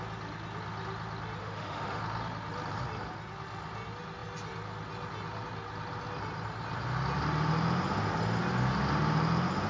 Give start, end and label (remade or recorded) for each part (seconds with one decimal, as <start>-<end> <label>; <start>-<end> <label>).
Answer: 0.0-1.4 recorded; 1.4-2.0 remade; 2.0-9.7 recorded